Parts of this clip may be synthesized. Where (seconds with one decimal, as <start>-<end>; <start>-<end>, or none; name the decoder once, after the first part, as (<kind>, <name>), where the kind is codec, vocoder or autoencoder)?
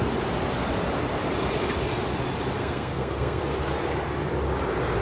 2.6-3.4 (codec, SNAC)